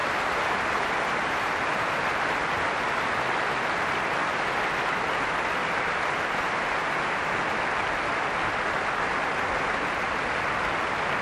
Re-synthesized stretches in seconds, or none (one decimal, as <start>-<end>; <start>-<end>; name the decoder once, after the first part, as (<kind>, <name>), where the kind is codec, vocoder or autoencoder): 0.0-2.8 (vocoder, BigVGAN v2); 5.6-7.3